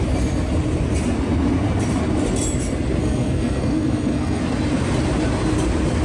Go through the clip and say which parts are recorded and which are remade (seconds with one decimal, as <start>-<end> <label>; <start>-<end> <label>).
0.0-3.0 recorded; 3.0-4.4 remade; 4.4-6.0 recorded